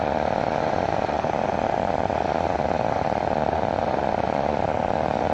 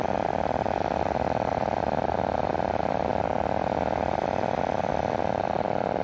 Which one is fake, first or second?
first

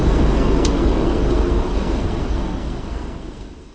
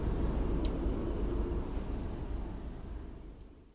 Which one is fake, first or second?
first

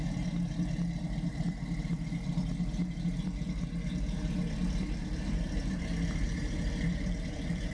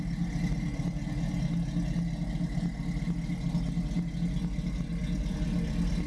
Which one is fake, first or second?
first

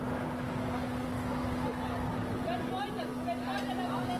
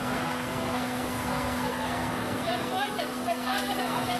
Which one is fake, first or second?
second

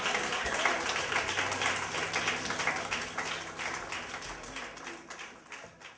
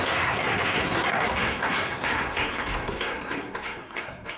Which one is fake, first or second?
second